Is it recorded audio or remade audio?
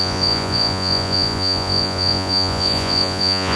remade